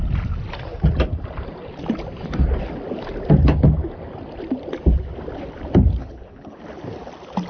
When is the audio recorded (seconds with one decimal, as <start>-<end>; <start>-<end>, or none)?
0.0-6.0; 6.6-7.5